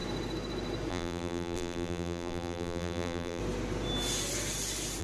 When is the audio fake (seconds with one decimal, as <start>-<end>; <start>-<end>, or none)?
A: 0.9-3.4